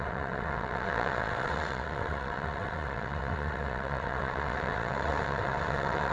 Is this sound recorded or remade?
remade